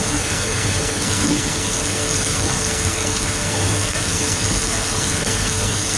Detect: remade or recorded remade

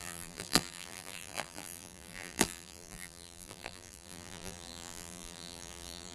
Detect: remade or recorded remade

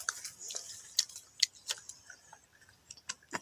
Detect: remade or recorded recorded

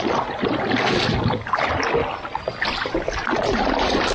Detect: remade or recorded recorded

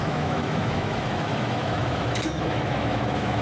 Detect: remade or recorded remade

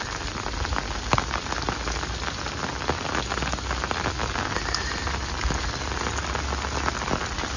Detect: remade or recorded recorded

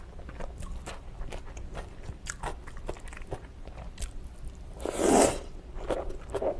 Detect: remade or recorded recorded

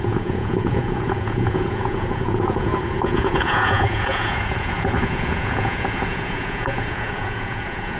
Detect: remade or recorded remade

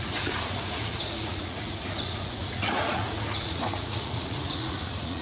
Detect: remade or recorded remade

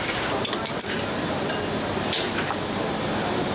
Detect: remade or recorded recorded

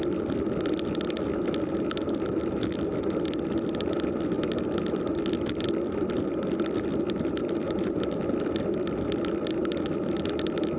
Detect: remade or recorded recorded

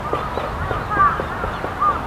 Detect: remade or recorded recorded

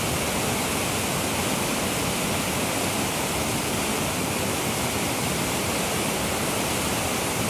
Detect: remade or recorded recorded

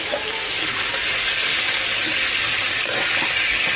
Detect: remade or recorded recorded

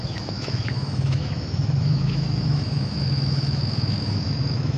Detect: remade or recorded remade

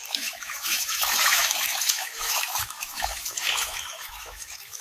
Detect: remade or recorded remade